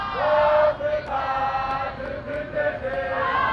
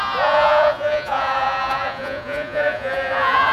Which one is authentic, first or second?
first